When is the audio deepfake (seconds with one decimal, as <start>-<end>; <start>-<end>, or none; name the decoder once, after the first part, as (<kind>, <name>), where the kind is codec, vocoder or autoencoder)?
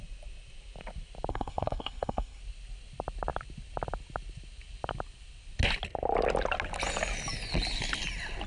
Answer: 1.3-2.4 (codec, SNAC)